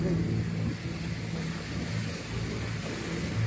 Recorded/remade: recorded